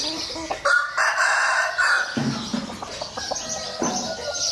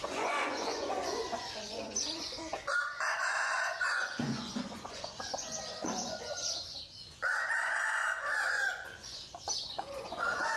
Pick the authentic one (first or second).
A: first